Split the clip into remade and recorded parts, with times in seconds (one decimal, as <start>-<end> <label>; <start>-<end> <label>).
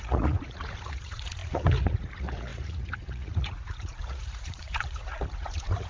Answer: 0.0-5.9 remade